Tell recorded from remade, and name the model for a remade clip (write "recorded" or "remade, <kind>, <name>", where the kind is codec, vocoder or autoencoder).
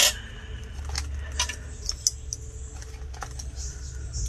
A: recorded